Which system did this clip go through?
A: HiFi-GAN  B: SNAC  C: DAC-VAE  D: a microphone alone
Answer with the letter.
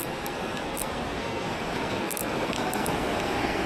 B